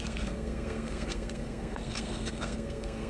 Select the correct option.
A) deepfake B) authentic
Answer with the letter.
A